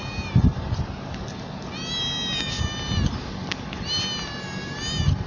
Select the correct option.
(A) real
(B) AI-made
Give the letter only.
A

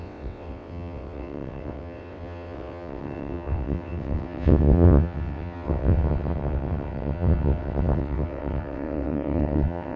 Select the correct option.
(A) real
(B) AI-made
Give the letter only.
B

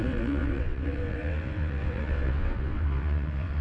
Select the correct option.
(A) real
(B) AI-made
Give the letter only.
B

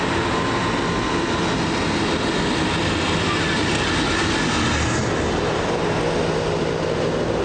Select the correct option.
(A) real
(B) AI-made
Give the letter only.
A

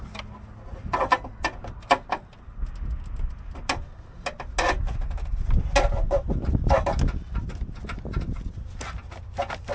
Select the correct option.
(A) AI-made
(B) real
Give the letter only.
B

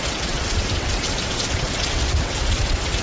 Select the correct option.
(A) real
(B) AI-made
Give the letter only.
B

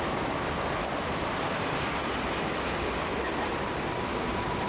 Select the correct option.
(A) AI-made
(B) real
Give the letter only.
B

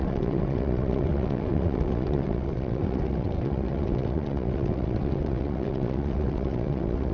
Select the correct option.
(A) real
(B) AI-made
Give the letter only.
B